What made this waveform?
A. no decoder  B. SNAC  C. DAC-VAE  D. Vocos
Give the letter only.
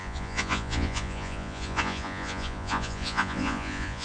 D